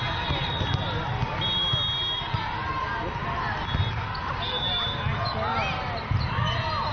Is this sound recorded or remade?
recorded